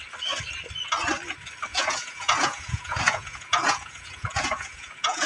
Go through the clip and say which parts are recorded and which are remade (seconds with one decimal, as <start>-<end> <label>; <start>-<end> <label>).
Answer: 0.0-1.7 recorded; 1.7-5.3 remade